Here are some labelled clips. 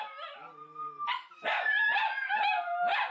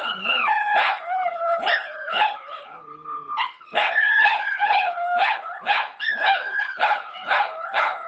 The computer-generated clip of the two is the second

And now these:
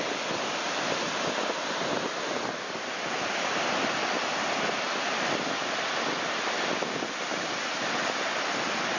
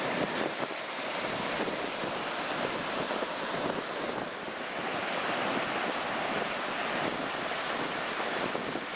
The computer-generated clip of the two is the second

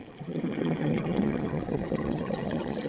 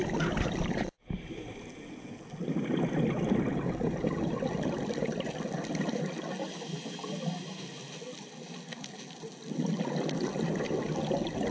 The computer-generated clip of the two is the first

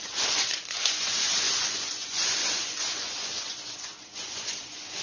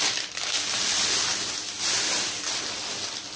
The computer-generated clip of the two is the first